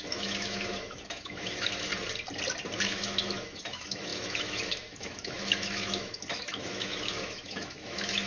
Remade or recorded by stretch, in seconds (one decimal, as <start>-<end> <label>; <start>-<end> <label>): 0.0-1.9 remade; 1.9-2.8 recorded; 2.8-8.3 remade